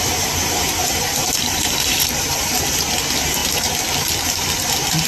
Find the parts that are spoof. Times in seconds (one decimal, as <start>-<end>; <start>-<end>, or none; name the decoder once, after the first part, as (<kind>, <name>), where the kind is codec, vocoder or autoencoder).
1.2-2.5 (vocoder, BigVGAN v2)